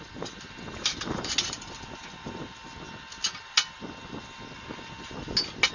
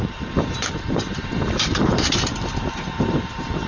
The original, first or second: first